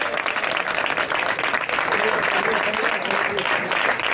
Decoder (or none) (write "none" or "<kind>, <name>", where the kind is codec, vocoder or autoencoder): vocoder, BigVGAN v2